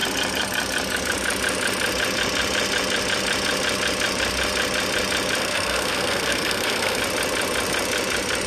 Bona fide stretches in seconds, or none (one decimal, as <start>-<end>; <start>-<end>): 0.0-5.4; 7.0-8.5